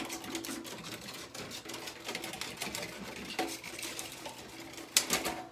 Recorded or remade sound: recorded